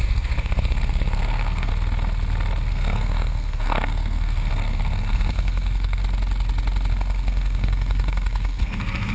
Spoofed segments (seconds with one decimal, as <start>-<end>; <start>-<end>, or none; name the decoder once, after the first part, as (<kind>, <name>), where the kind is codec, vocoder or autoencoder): 0.0-1.7 (codec, SNAC); 2.7-6.0; 6.9-9.1